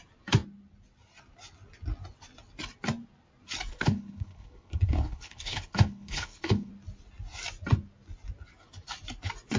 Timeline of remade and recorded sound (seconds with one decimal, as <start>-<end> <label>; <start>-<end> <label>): 0.0-3.7 recorded; 3.7-6.7 remade; 6.7-9.6 recorded